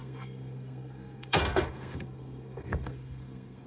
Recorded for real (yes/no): no